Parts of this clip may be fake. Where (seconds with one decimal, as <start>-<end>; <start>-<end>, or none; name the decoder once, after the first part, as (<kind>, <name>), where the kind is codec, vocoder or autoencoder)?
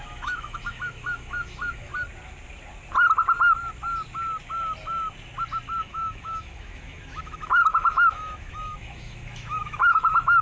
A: 0.0-1.9 (autoencoder, DAC-VAE); 5.8-10.4